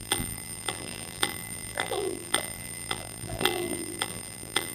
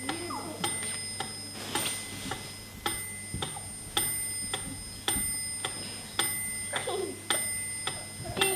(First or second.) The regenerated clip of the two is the first